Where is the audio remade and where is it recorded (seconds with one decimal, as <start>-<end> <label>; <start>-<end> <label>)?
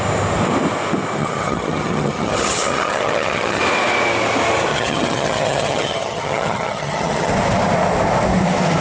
0.0-1.2 recorded; 1.2-3.6 remade; 3.6-4.7 recorded; 4.7-7.3 remade; 7.3-8.8 recorded